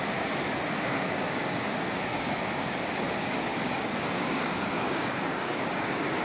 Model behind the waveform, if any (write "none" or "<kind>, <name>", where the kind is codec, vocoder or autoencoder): codec, DAC